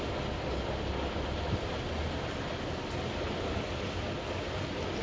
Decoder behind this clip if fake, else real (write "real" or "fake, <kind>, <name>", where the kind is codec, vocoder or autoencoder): real